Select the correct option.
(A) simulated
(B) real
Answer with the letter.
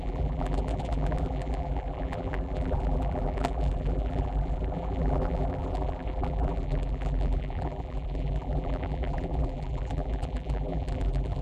A